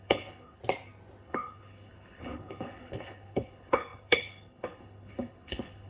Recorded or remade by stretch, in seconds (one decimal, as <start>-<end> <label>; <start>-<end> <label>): 0.0-0.6 remade; 0.6-1.2 recorded; 1.2-5.9 remade